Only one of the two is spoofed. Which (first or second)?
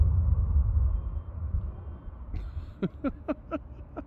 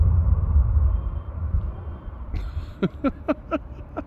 second